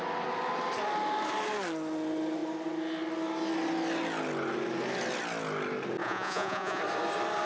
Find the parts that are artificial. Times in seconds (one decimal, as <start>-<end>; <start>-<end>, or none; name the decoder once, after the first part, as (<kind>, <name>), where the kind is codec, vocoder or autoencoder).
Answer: 6.0-6.8 (vocoder, Vocos)